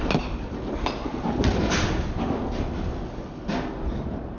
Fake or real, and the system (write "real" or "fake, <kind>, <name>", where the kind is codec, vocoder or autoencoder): real